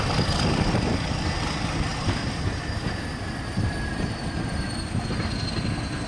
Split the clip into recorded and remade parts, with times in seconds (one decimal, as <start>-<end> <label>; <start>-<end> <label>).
0.0-6.1 recorded

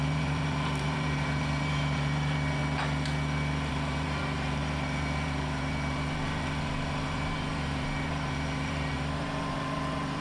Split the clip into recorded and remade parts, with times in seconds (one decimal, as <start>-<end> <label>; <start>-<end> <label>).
0.0-2.6 remade; 2.6-3.7 recorded; 3.7-10.2 remade

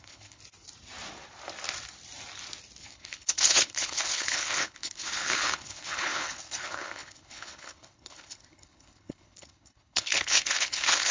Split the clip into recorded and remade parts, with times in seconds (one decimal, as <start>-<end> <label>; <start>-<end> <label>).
0.0-0.4 remade; 0.4-2.8 recorded; 2.8-11.1 remade

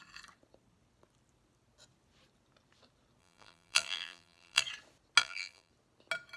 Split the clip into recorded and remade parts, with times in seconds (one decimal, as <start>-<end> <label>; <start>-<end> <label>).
0.0-3.2 recorded; 3.2-4.6 remade; 4.6-5.2 recorded; 5.2-5.7 remade; 5.7-6.4 recorded

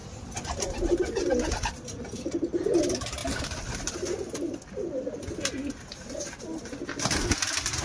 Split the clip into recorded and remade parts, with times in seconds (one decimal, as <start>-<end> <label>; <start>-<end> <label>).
0.0-7.8 recorded

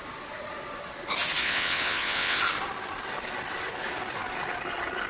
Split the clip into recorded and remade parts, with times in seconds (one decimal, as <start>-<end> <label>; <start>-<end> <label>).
0.0-1.4 recorded; 1.4-2.4 remade; 2.4-5.1 recorded

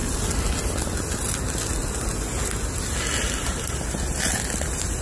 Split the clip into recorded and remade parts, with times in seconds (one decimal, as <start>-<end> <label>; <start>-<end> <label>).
0.0-5.0 recorded

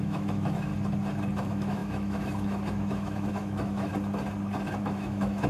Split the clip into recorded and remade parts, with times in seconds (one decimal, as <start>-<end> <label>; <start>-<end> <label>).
0.0-0.7 remade; 0.7-1.4 recorded; 1.4-3.9 remade; 3.9-4.8 recorded; 4.8-5.5 remade